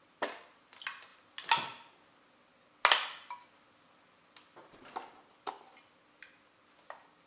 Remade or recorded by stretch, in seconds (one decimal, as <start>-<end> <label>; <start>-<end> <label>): 0.0-7.3 recorded